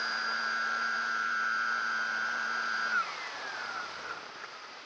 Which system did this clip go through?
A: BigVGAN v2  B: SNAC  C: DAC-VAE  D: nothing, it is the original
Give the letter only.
A